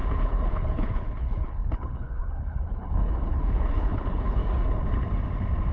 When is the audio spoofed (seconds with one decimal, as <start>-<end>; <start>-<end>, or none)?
0.0-4.4